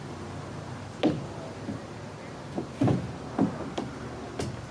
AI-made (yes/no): no